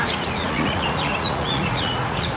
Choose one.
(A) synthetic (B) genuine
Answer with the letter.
A